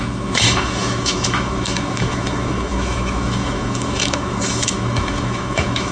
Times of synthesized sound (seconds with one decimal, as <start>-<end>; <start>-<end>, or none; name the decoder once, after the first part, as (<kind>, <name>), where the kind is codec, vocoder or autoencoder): 0.0-5.9 (autoencoder, DAC-VAE)